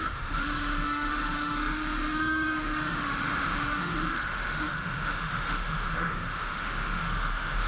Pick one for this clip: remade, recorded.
remade